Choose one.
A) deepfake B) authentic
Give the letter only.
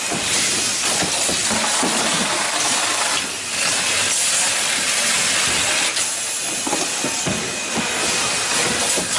B